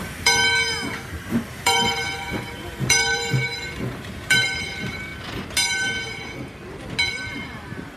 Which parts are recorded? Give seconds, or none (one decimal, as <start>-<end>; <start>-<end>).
0.4-1.3; 5.1-7.1